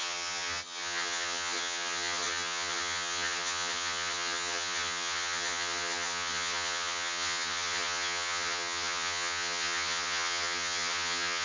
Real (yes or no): no